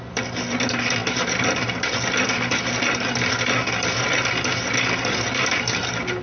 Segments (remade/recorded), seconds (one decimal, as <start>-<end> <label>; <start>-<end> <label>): 0.0-6.2 recorded